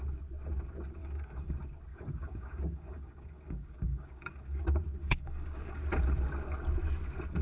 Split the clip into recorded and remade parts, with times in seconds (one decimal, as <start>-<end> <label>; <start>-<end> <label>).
0.0-1.0 recorded; 1.0-1.5 remade; 1.5-1.9 recorded; 1.9-4.6 remade; 4.6-5.0 recorded; 5.0-5.8 remade; 5.8-7.4 recorded

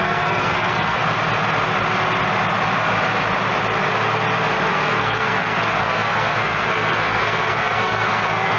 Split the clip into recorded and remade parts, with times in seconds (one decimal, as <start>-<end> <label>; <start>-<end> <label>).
0.0-1.0 remade; 1.0-4.7 recorded; 4.7-8.6 remade

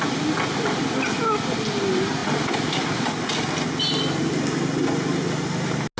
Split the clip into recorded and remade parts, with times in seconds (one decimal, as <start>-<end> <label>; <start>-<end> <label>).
0.0-6.0 recorded

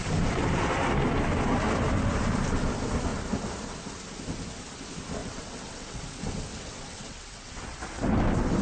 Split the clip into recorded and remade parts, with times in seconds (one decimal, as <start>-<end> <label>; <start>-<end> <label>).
0.0-5.2 recorded; 5.2-6.0 remade; 6.0-6.5 recorded; 6.5-7.6 remade; 7.6-8.6 recorded

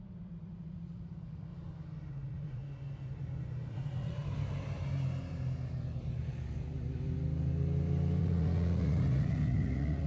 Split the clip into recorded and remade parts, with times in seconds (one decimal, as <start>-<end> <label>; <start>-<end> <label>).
0.0-1.5 remade; 1.5-2.1 recorded; 2.1-2.6 remade; 2.6-3.7 recorded; 3.7-4.2 remade; 4.2-8.2 recorded; 8.2-10.1 remade

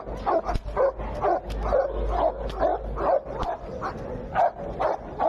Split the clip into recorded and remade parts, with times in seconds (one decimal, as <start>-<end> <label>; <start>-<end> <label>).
0.0-5.3 recorded

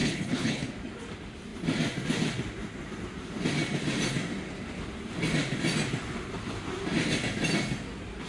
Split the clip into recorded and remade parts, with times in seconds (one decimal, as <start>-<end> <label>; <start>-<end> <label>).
0.0-0.7 remade; 0.7-8.3 recorded